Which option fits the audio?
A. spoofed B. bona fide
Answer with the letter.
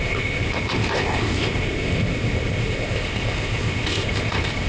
A